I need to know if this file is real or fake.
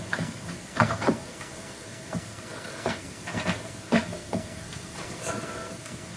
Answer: fake